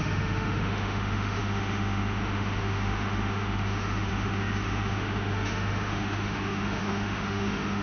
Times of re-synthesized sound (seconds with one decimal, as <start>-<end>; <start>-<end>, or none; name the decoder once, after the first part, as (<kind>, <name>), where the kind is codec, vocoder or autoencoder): 0.0-7.8 (autoencoder, DAC-VAE)